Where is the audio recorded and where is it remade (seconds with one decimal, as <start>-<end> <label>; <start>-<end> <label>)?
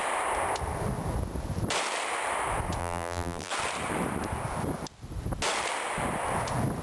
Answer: 0.0-2.8 recorded; 2.8-3.5 remade; 3.5-6.8 recorded